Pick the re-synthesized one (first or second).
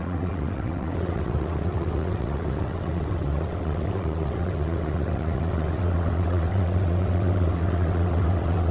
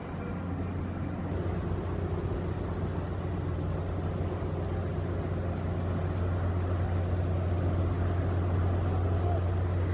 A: first